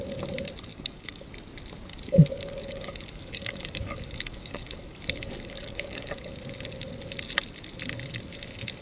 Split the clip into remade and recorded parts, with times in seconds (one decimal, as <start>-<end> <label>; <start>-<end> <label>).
0.0-0.7 recorded; 0.7-1.3 remade; 1.3-1.9 recorded; 1.9-6.3 remade; 6.3-8.8 recorded

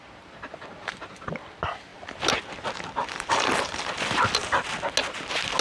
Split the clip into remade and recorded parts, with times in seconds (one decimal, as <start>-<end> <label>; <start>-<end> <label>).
0.0-3.0 recorded; 3.0-3.9 remade; 3.9-5.6 recorded

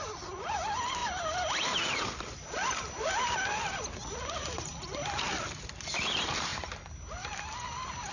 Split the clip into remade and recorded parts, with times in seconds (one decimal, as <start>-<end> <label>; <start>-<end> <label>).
0.0-8.1 recorded

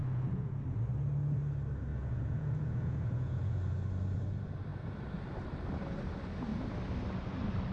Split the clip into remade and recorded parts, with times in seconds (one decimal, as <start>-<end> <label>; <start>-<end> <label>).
0.0-0.6 remade; 0.6-1.9 recorded; 1.9-3.6 remade; 3.6-7.7 recorded